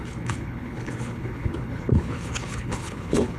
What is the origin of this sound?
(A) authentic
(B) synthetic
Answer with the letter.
B